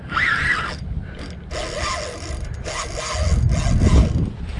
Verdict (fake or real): real